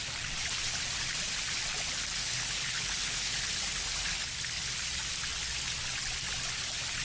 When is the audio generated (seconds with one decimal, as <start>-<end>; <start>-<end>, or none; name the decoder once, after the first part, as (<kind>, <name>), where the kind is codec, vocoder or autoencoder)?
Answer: 2.2-3.3 (codec, HILCodec)